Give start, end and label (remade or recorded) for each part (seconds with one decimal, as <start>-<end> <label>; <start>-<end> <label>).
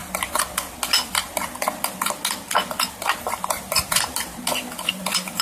0.0-3.2 recorded; 3.2-4.3 remade; 4.3-4.9 recorded; 4.9-5.4 remade